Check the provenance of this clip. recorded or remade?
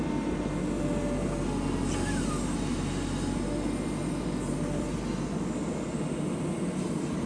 recorded